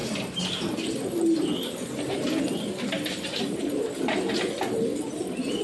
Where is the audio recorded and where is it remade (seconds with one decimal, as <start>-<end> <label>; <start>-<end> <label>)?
0.0-5.6 recorded